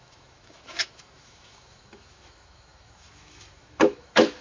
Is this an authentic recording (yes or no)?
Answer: no